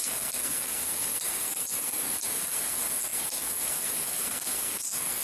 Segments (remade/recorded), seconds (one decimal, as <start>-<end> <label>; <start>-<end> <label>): 0.0-5.2 remade